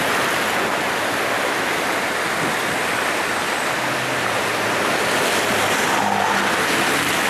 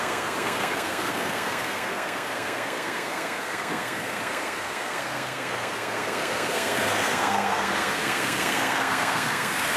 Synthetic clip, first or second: second